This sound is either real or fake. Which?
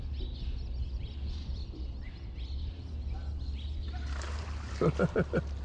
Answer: real